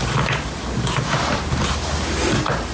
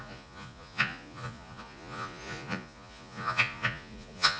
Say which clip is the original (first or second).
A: first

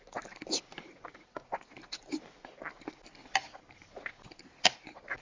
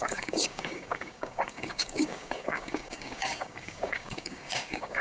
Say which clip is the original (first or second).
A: first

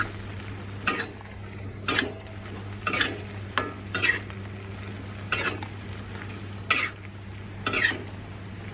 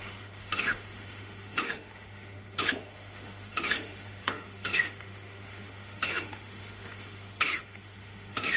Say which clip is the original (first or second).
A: first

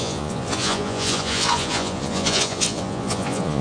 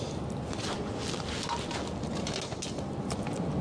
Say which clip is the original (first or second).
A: second